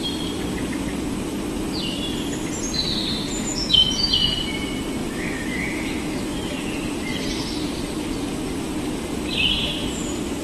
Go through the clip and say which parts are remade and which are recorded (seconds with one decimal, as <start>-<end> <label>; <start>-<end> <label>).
0.0-3.5 recorded; 3.5-4.1 remade; 4.1-5.0 recorded; 5.0-6.7 remade; 6.7-10.4 recorded